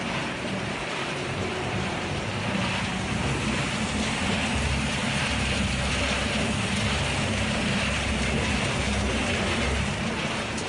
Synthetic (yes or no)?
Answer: yes